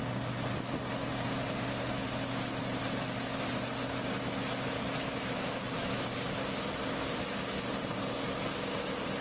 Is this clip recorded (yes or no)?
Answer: yes